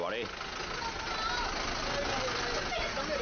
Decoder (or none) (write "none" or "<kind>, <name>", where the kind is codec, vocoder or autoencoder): none